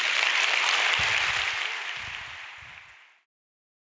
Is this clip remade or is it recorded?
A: recorded